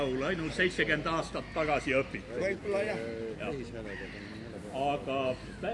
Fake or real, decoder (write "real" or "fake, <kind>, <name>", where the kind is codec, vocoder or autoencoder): real